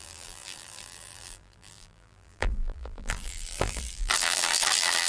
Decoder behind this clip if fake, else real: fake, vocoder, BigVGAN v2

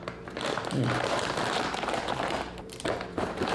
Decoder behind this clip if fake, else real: fake, vocoder, BigVGAN v2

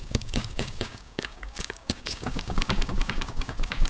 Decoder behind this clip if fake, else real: fake, codec, DAC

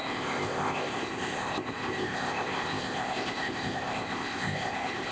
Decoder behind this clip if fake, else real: fake, codec, ZipCodec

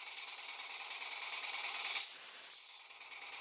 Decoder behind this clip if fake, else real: real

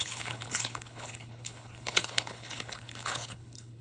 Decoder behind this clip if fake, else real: fake, codec, HILCodec